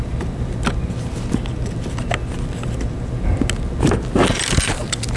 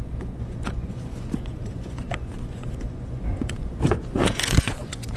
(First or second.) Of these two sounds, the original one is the first